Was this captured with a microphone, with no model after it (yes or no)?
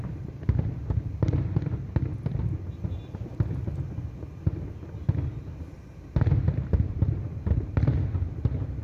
yes